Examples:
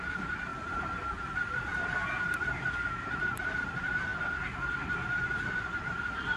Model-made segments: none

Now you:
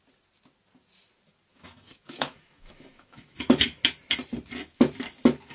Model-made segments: 1.5-3.8 (autoencoder, DAC-VAE)

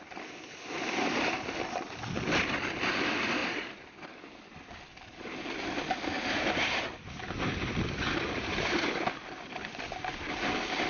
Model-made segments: none

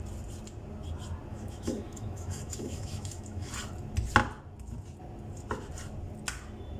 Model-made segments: 1.3-3.5 (autoencoder, DAC-VAE)

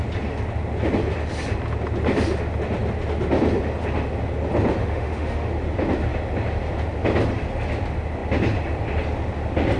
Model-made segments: 4.8-5.5 (autoencoder, DAC-VAE)

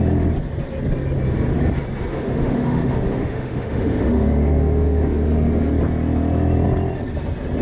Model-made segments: 2.1-5.7 (autoencoder, DAC-VAE)